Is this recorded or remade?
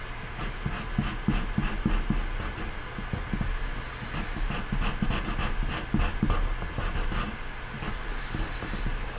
recorded